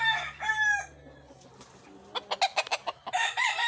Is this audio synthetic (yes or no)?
no